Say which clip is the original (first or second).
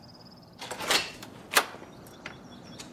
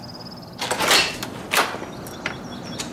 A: second